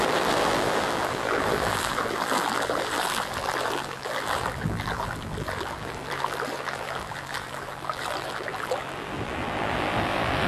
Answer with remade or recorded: remade